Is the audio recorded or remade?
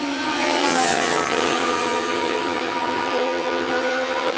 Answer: remade